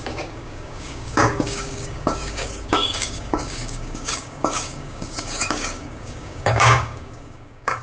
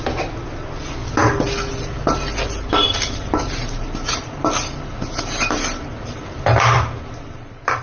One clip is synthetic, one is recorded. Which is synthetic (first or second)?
first